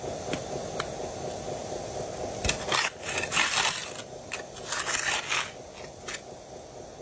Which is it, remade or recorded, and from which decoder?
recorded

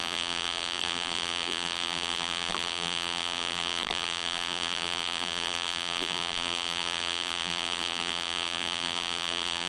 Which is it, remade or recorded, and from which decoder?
remade, vocoder, BigVGAN v2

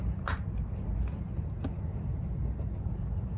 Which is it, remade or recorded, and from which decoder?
recorded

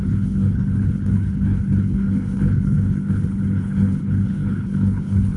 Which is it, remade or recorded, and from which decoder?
remade, codec, HILCodec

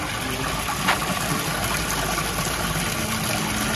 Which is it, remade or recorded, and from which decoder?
recorded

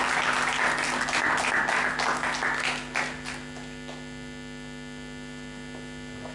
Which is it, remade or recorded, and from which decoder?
recorded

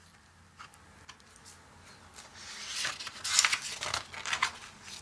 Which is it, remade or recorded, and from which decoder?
recorded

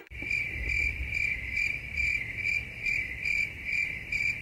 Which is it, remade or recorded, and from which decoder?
remade, vocoder, BigVGAN v2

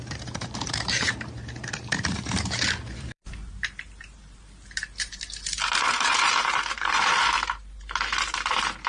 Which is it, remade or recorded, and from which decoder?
remade, vocoder, BigVGAN v2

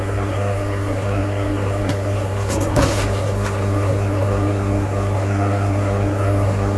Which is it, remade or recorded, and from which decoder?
remade, codec, SNAC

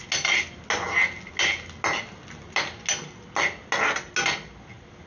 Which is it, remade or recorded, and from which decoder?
recorded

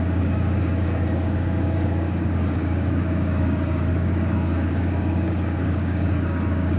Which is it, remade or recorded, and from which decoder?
remade, codec, DAC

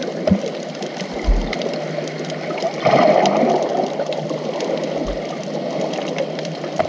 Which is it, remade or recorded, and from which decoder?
recorded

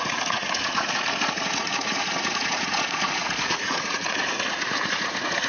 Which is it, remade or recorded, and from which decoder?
remade, vocoder, Vocos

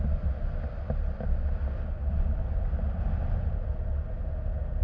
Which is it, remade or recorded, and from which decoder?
recorded